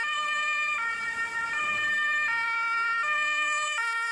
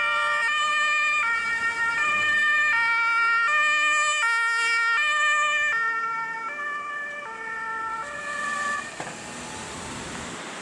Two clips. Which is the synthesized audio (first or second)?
first